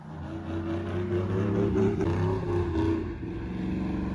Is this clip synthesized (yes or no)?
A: no